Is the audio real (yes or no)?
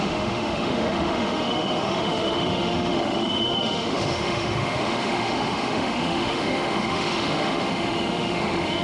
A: no